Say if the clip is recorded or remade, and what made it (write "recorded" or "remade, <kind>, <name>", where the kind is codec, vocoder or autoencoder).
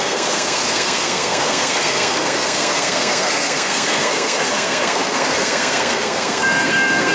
remade, codec, SNAC